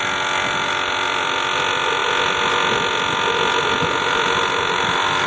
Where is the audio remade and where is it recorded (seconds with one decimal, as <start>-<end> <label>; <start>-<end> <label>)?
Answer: 0.0-5.3 recorded